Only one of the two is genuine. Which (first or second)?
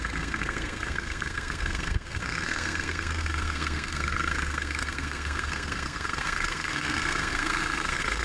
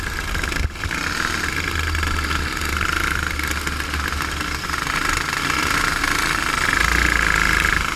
second